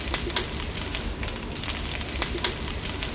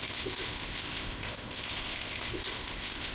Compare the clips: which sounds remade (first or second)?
second